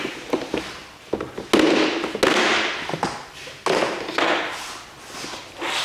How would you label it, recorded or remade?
recorded